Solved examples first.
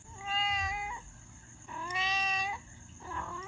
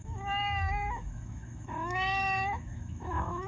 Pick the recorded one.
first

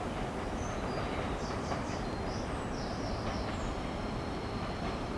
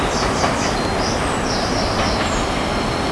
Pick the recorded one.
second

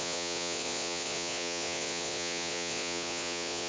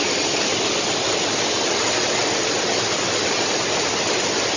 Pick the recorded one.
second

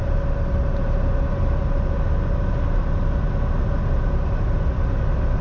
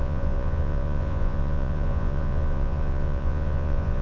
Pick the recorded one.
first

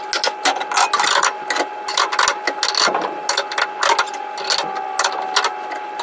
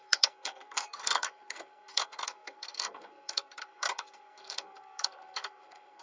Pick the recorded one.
first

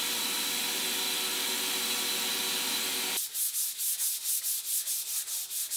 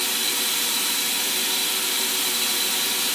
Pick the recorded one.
first